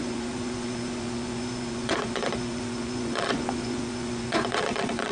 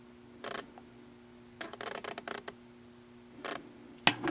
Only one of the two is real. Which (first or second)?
second